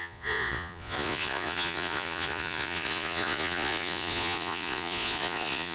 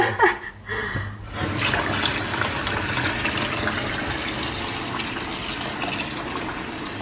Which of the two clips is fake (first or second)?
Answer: first